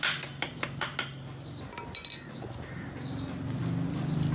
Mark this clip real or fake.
real